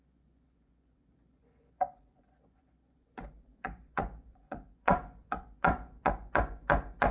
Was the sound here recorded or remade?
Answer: remade